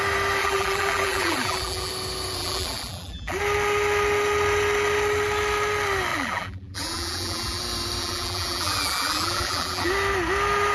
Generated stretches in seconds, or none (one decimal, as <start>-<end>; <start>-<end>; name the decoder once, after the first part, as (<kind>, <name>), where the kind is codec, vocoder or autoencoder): 0.4-1.9 (vocoder, BigVGAN v2); 2.4-3.4; 6.1-7.6; 8.0-9.9